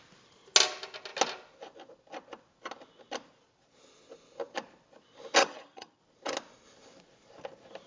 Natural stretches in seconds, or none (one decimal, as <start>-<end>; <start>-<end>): 0.0-5.4; 6.0-7.9